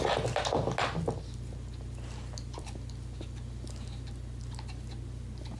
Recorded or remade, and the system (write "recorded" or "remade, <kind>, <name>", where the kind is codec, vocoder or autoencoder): recorded